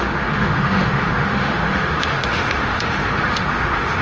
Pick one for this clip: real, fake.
fake